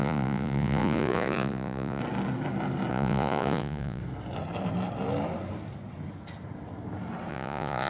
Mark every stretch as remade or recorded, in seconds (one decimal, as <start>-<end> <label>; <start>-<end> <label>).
0.0-2.0 remade; 2.0-2.9 recorded; 2.9-4.0 remade; 4.0-7.3 recorded; 7.3-7.9 remade